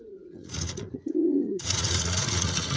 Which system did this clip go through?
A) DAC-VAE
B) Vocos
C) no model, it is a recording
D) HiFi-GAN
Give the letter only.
B